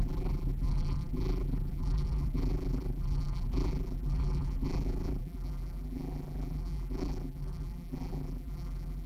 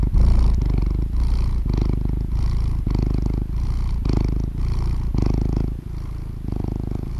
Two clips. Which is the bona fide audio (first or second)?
second